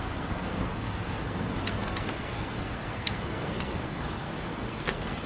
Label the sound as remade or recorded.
remade